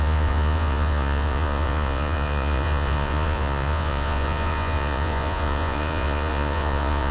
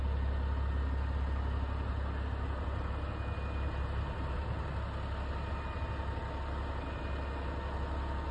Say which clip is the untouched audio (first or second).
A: second